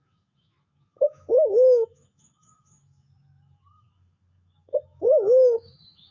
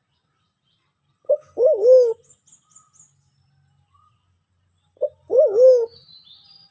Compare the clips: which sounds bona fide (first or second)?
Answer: second